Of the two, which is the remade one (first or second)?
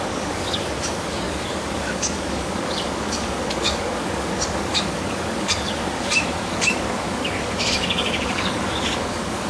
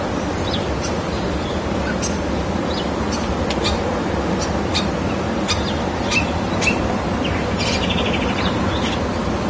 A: first